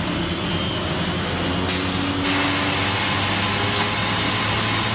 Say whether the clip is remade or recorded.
recorded